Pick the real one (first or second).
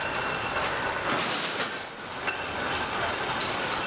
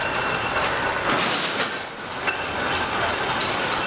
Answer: second